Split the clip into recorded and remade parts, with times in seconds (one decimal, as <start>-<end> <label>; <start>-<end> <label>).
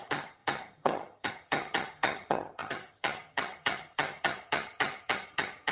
0.0-5.7 remade